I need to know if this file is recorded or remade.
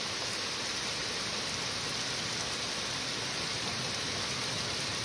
recorded